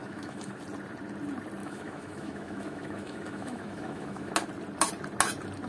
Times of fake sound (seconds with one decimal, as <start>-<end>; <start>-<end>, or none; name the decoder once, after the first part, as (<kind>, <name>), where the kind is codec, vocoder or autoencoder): 0.0-0.6 (autoencoder, DAC-VAE); 1.6-4.3

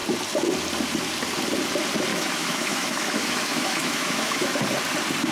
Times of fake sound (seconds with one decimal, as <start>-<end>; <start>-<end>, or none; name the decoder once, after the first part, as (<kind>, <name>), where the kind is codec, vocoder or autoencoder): 2.1-4.6 (autoencoder, DAC-VAE)